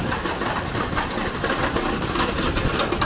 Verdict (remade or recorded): recorded